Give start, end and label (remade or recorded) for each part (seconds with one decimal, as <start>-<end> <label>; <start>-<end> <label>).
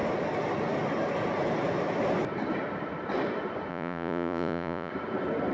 0.0-3.7 recorded; 3.7-4.9 remade; 4.9-5.5 recorded